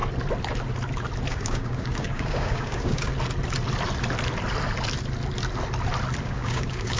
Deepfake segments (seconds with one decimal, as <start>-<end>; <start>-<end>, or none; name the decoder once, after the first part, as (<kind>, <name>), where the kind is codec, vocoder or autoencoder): 1.3-3.1 (codec, DAC); 6.2-7.0